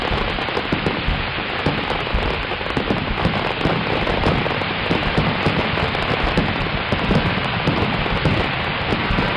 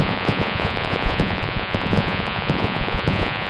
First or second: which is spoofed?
second